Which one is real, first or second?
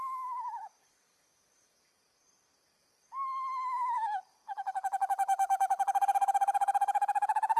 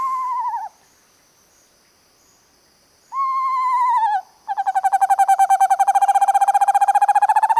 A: second